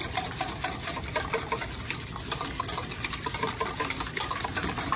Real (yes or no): yes